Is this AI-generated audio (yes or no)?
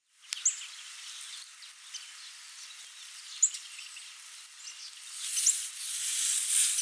no